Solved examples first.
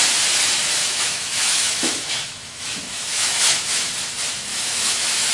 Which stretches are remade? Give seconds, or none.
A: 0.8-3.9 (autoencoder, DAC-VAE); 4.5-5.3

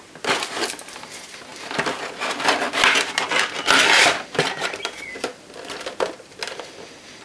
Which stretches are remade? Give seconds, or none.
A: none

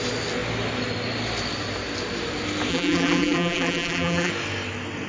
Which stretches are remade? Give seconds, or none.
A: 2.7-4.3 (vocoder, BigVGAN v2)